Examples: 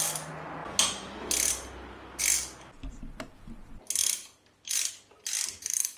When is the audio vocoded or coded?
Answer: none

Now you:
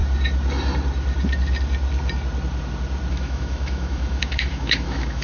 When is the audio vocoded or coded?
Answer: 3.1-5.2 (autoencoder, DAC-VAE)

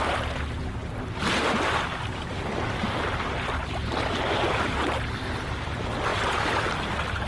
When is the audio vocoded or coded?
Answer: none

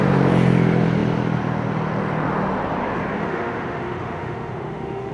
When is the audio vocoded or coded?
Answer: 3.2-5.1 (autoencoder, DAC-VAE)

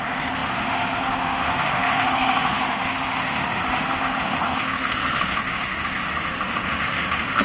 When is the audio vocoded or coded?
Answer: 0.0-7.4 (autoencoder, DAC-VAE)

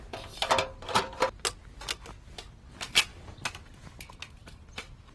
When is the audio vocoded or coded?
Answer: none

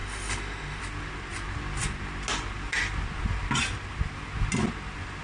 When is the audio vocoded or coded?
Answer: 0.0-0.8 (autoencoder, DAC-VAE)